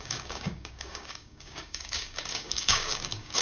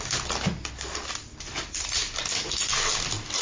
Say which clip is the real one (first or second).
second